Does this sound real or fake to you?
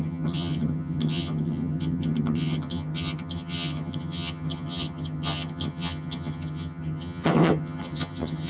fake